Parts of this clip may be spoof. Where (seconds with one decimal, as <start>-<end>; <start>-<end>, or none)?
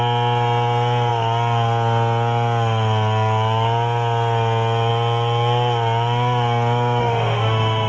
7.0-7.9